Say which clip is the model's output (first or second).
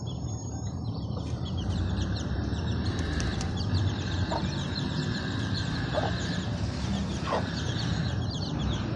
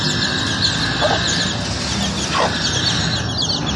first